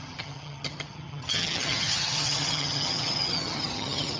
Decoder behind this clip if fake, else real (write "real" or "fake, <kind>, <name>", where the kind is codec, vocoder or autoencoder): fake, vocoder, HiFi-GAN